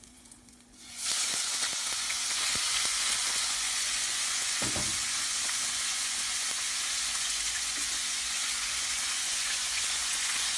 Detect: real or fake fake